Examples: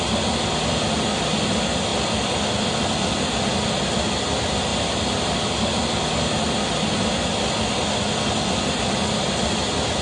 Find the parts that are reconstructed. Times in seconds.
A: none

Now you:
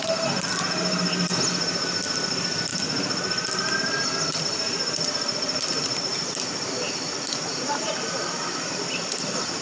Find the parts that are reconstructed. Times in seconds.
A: none